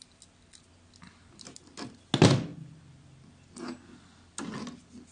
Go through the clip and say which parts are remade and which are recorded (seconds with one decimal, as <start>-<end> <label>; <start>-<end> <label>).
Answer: 0.0-5.1 recorded